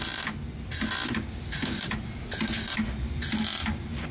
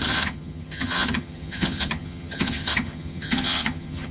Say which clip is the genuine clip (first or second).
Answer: first